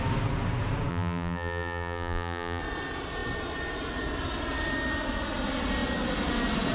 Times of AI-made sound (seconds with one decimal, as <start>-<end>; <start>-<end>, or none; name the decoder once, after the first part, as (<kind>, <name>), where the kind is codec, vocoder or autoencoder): 0.9-2.6 (vocoder, BigVGAN v2)